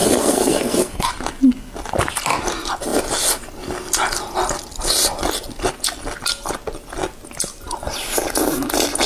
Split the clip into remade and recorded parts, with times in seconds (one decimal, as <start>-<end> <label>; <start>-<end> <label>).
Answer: 0.0-1.1 remade; 1.1-9.1 recorded